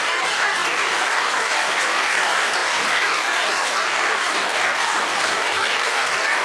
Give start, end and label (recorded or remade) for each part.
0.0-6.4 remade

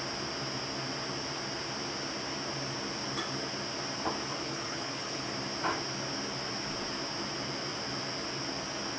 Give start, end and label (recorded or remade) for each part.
0.0-4.4 recorded; 4.4-5.3 remade; 5.3-9.0 recorded

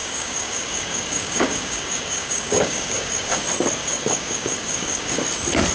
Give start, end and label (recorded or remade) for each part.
0.0-3.4 remade; 3.4-3.8 recorded; 3.8-5.2 remade; 5.2-5.7 recorded